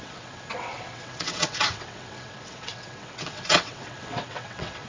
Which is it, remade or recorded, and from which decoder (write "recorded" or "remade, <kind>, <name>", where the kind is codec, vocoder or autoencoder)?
remade, vocoder, WaveNeXt